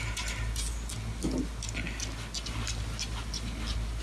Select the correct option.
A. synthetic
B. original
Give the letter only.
B